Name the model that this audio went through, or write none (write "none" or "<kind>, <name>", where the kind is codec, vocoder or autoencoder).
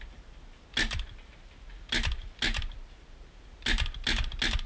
none